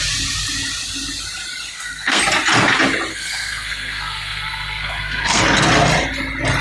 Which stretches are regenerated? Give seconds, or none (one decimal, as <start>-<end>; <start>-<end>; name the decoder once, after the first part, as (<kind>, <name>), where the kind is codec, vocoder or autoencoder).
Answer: 1.7-2.2 (codec, SNAC); 3.1-5.4